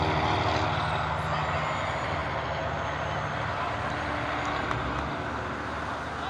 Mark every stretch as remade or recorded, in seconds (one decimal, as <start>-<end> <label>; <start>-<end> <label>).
0.0-6.3 recorded